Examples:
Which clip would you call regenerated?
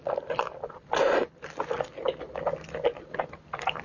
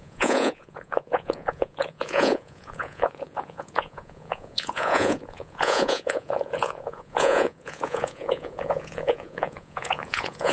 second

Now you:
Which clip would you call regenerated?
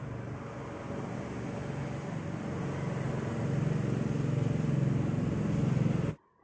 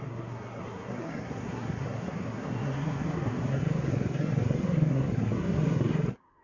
second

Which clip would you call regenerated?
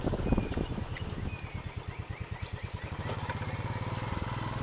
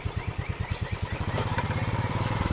second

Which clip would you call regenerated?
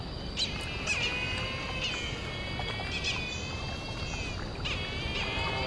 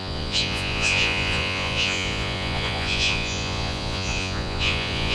second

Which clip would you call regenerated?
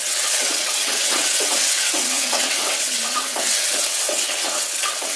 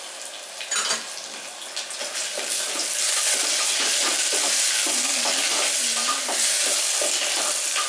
first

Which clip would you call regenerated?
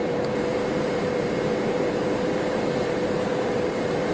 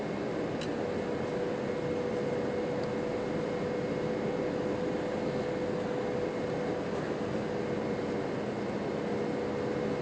first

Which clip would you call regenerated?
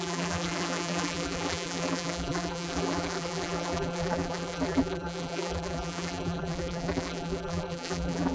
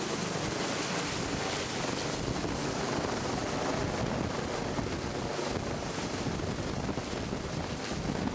first